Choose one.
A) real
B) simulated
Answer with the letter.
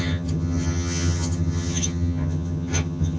B